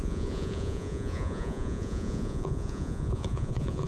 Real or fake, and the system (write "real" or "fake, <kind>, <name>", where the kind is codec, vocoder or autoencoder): fake, vocoder, Vocos